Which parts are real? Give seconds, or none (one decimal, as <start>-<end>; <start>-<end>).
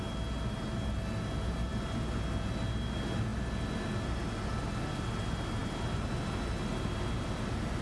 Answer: 0.0-7.8